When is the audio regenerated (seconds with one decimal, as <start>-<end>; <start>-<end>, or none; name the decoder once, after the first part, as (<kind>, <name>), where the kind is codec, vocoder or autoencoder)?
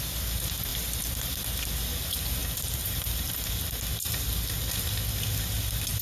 0.7-1.4 (vocoder, BigVGAN v2); 2.4-3.5